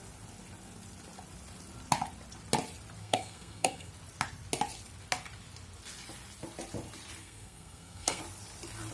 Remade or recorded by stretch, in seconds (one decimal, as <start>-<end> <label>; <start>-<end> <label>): 0.0-3.0 recorded; 3.0-3.9 remade; 3.9-7.2 recorded; 7.2-8.2 remade; 8.2-8.9 recorded